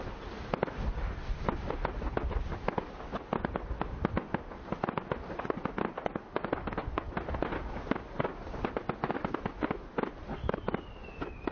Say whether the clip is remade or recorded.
recorded